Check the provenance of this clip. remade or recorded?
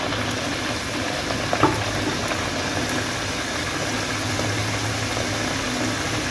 recorded